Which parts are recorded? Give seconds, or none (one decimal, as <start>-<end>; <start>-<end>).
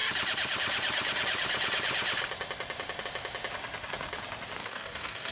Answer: 0.0-4.6